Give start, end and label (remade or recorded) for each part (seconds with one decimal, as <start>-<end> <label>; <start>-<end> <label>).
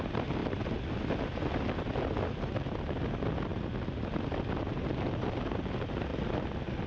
0.0-0.4 recorded; 0.4-3.0 remade; 3.0-6.1 recorded; 6.1-6.9 remade